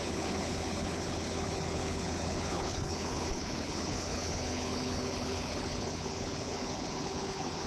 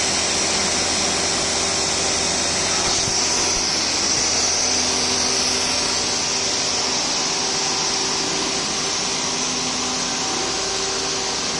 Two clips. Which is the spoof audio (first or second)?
first